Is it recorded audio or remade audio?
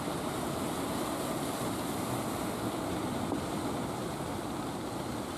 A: recorded